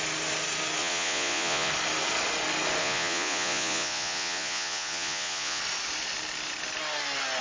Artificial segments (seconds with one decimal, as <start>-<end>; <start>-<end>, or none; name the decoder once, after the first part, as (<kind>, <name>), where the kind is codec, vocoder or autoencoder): 0.8-1.7 (vocoder, Vocos); 2.8-5.6